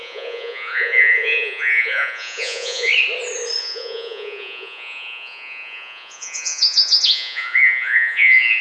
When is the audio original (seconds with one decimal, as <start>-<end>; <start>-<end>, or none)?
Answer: 2.9-3.6